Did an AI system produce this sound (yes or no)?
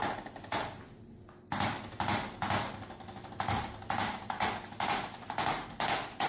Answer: no